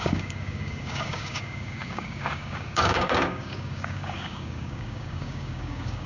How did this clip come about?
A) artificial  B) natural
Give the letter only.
A